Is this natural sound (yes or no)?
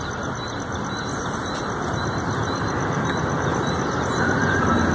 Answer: yes